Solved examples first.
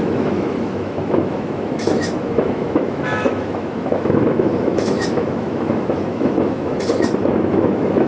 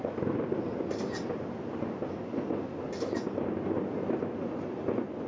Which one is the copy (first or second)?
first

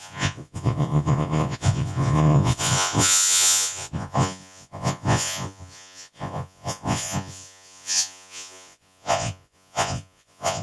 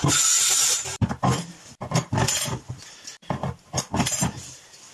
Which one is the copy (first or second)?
first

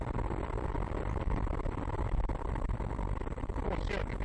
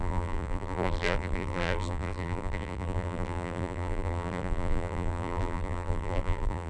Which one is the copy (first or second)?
second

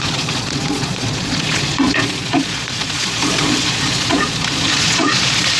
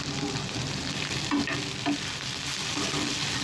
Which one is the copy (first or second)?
first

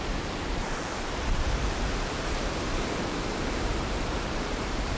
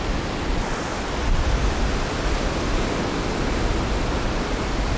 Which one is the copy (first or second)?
first